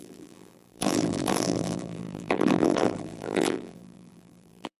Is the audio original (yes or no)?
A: no